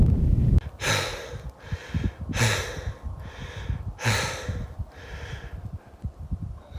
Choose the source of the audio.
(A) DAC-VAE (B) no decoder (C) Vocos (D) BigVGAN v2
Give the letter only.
B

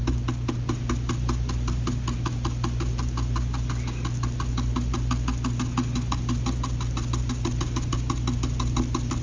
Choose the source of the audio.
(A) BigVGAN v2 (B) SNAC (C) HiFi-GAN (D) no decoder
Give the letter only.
D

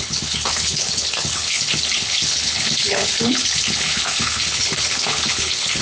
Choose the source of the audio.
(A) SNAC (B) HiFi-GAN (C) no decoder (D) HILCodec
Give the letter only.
D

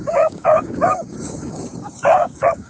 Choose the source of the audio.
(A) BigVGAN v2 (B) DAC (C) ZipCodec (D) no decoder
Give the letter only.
B